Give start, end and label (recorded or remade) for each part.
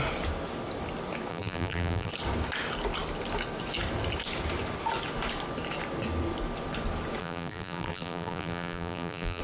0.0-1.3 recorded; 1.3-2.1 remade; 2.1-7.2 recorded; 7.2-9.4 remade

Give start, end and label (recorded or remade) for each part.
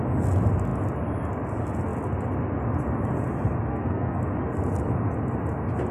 0.0-3.7 recorded; 3.7-4.2 remade; 4.2-5.9 recorded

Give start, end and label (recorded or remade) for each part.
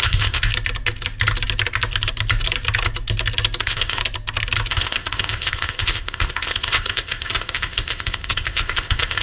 0.0-0.5 remade; 0.5-3.6 recorded; 3.6-4.0 remade; 4.0-4.7 recorded; 4.7-9.2 remade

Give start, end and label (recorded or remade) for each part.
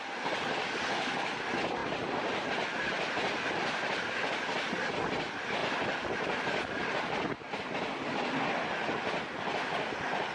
0.0-10.3 recorded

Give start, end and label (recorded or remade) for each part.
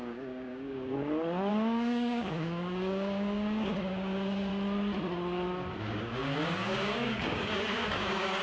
0.0-0.9 remade; 0.9-1.5 recorded; 1.5-4.5 remade; 4.5-5.8 recorded; 5.8-8.4 remade